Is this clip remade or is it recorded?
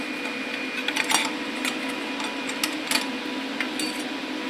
recorded